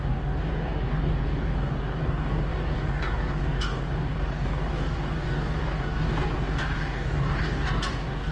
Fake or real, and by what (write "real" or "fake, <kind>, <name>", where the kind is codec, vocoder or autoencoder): fake, codec, DAC